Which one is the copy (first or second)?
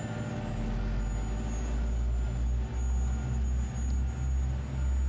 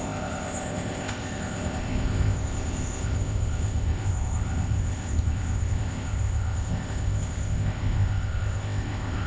second